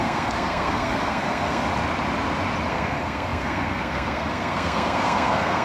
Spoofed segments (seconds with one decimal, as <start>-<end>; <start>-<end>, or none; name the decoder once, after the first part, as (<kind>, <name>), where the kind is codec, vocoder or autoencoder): 0.0-1.6 (codec, SNAC); 2.7-5.6